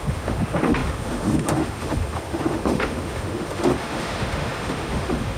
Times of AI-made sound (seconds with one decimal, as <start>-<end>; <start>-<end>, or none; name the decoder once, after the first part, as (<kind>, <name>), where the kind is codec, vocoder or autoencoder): 0.0-5.4 (autoencoder, DAC-VAE)